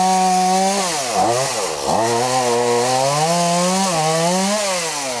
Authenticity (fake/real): real